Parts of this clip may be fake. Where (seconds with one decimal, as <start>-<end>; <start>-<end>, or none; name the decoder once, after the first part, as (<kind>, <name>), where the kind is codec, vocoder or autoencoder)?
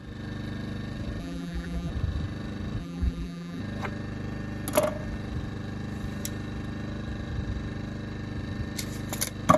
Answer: 1.2-1.9 (vocoder, BigVGAN v2); 2.8-3.6